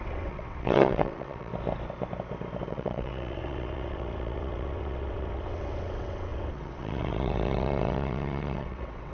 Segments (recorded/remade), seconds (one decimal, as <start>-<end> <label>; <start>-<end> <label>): 0.0-1.5 remade; 1.5-2.7 recorded; 2.7-9.1 remade